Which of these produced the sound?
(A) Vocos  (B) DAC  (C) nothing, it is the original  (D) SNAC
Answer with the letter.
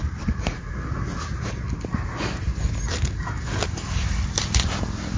C